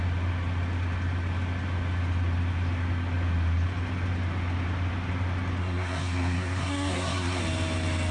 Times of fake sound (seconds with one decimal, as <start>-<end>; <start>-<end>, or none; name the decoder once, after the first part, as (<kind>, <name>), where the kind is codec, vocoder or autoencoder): 5.6-7.4 (codec, SNAC)